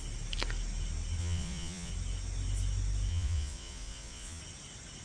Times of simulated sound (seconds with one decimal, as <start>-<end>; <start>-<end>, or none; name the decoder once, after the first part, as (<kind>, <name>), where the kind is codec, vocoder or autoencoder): 1.2-1.9 (vocoder, Vocos); 3.1-4.4